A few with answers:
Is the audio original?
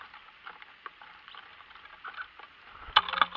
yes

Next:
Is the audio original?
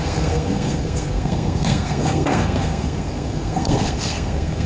no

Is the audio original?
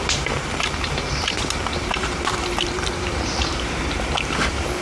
no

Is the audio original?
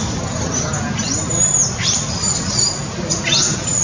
yes